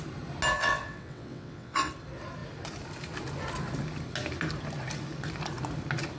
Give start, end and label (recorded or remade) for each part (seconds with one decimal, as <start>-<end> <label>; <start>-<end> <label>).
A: 0.0-0.6 recorded; 0.6-1.9 remade; 1.9-6.2 recorded